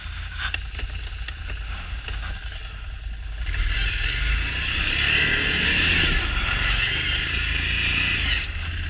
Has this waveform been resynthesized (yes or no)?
no